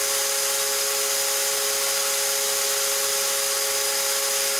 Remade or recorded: recorded